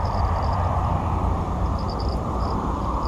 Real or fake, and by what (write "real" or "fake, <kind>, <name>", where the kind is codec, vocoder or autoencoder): fake, vocoder, BigVGAN v2